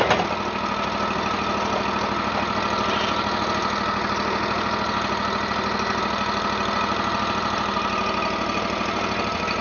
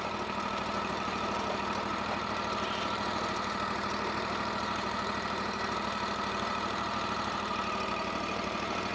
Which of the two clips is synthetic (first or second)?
second